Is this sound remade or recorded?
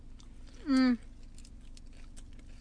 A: recorded